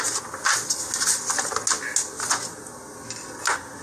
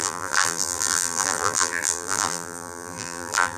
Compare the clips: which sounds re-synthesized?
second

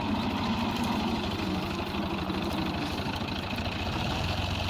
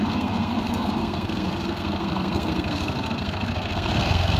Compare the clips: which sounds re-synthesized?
second